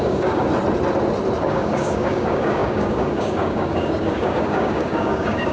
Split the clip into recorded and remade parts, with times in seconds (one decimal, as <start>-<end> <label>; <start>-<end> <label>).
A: 0.0-0.5 remade; 0.5-1.4 recorded; 1.4-5.5 remade